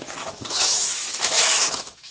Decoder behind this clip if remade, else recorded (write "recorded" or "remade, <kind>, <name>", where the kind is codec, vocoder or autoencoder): remade, autoencoder, DAC-VAE